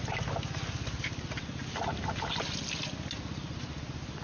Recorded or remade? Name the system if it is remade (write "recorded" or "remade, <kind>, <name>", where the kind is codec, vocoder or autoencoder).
recorded